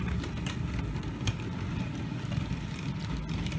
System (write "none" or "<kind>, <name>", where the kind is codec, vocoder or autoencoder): none